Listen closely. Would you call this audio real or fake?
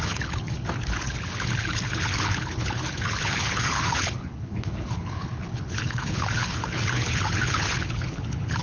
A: fake